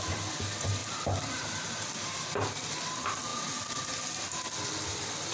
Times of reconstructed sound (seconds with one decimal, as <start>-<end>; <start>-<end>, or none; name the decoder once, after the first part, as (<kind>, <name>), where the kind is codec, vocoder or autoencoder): none